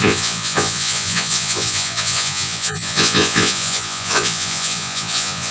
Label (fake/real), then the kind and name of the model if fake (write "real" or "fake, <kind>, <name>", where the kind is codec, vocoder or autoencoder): fake, vocoder, Vocos